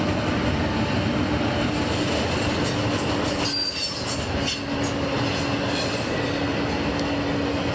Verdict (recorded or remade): recorded